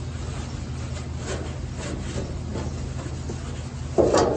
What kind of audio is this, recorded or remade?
recorded